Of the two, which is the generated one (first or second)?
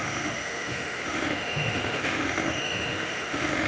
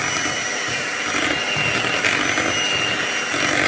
first